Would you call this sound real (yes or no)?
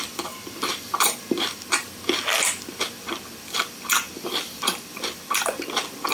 no